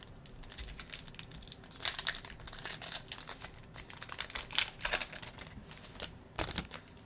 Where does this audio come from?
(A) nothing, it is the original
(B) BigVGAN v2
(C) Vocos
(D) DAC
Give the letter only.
A